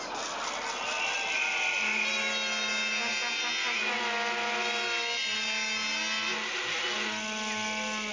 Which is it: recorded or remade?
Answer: recorded